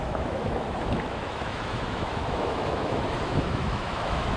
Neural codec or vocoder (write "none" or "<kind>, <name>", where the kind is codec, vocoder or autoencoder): autoencoder, DAC-VAE